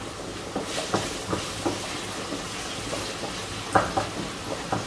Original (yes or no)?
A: yes